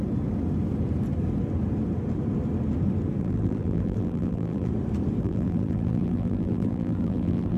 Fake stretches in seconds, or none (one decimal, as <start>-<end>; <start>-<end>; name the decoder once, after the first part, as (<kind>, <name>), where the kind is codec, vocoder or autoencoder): 3.2-4.7 (vocoder, BigVGAN v2); 5.2-7.6